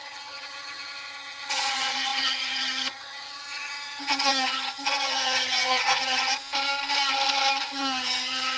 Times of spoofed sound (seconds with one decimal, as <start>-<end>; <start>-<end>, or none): 0.0-6.4; 7.6-8.6